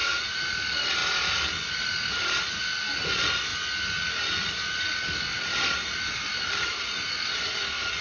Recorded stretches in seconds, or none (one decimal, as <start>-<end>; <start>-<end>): 0.5-5.3; 7.5-8.0